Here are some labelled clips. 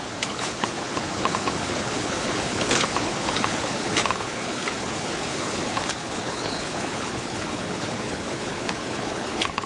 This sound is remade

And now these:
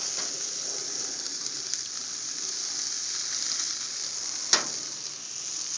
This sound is recorded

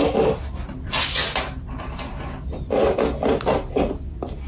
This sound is recorded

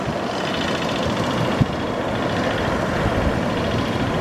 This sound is recorded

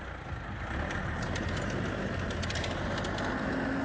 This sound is recorded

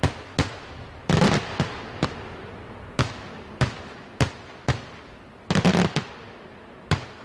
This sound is recorded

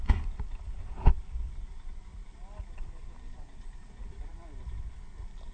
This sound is recorded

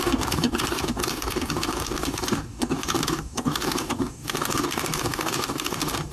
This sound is remade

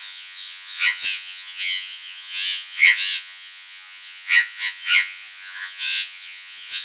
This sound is remade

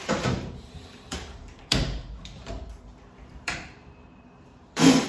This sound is remade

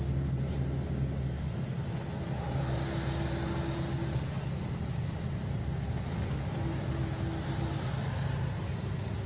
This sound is recorded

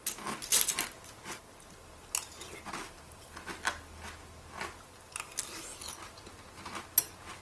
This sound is recorded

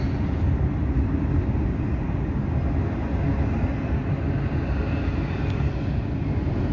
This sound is recorded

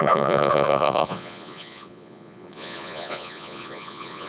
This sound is remade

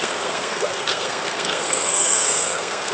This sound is remade